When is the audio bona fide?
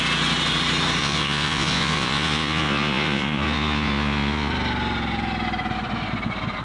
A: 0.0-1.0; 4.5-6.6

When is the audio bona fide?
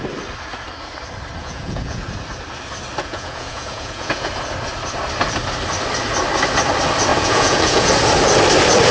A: 0.0-1.4; 2.0-3.0; 4.3-7.1; 7.9-8.9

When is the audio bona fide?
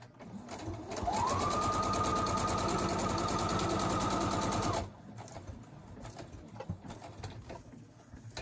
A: 0.0-8.4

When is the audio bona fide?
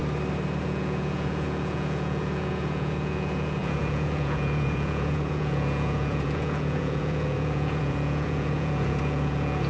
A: 0.0-0.6